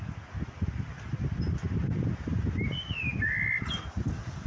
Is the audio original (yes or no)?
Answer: yes